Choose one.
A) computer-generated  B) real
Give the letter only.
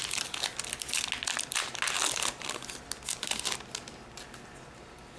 B